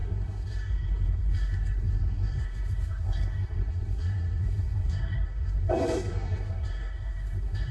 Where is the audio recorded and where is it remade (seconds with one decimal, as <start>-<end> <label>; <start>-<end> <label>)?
0.0-7.7 remade